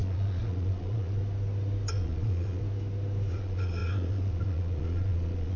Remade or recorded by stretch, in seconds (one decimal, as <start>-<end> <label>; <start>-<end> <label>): 0.0-1.2 remade; 1.2-1.9 recorded; 1.9-2.6 remade; 2.6-3.3 recorded; 3.3-5.6 remade